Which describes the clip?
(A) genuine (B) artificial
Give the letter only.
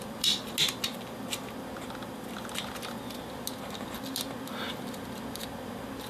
A